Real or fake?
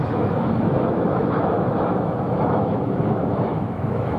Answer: fake